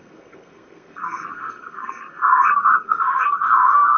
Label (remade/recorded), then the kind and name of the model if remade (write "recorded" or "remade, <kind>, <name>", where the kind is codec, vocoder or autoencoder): remade, codec, SNAC